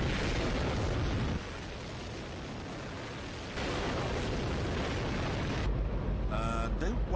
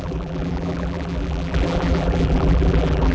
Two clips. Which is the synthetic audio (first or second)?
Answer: second